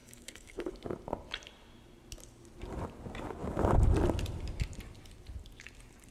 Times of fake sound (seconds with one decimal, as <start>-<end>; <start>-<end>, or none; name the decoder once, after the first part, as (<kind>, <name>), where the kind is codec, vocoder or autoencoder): 0.0-0.7 (codec, SNAC)